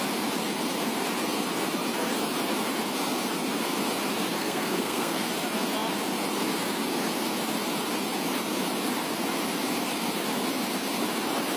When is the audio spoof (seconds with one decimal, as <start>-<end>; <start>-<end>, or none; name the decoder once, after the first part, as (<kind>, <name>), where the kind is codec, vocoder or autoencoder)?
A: 4.4-5.2 (codec, SNAC)